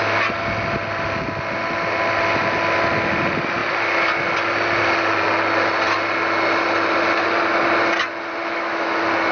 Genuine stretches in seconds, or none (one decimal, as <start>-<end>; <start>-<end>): 0.0-8.4; 8.9-9.3